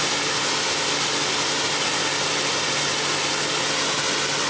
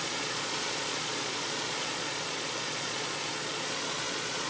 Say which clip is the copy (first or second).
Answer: second